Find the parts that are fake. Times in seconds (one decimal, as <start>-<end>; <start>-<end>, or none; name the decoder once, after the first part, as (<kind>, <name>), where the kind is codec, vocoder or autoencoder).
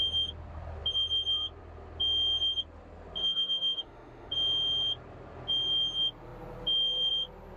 3.2-4.3 (autoencoder, DAC-VAE)